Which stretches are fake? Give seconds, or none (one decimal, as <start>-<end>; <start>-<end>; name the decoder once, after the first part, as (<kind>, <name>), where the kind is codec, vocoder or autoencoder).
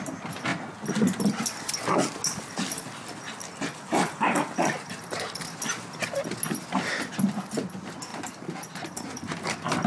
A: 8.1-9.9 (vocoder, BigVGAN v2)